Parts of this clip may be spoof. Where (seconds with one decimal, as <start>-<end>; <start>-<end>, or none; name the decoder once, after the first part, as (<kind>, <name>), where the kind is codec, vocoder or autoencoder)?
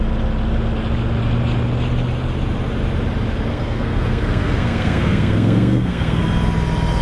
3.5-6.2 (codec, SNAC)